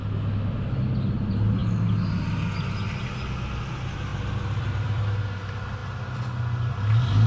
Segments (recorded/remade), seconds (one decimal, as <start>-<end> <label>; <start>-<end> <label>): 0.0-4.1 recorded; 4.1-5.0 remade; 5.0-5.8 recorded; 5.8-6.7 remade; 6.7-7.3 recorded